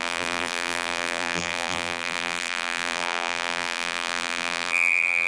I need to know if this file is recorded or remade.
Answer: remade